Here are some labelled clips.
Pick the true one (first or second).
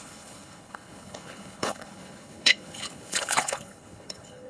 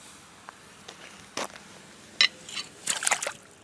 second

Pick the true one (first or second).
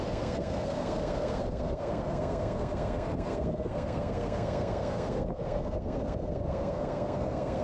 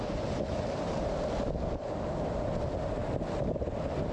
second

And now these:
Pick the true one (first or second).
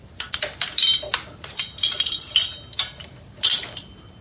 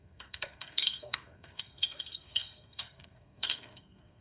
first